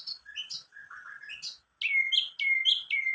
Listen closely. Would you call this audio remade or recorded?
recorded